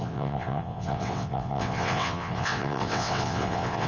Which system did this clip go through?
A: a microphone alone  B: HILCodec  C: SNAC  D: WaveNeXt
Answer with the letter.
D